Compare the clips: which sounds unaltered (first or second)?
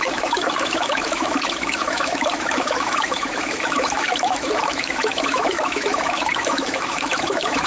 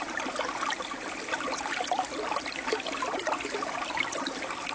second